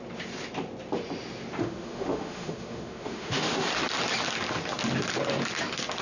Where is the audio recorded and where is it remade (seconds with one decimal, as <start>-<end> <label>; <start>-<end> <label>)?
0.0-1.6 recorded; 1.6-3.7 remade; 3.7-6.0 recorded